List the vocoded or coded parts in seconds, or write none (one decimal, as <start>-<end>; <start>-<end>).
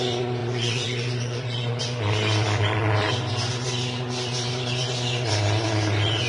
0.4-1.8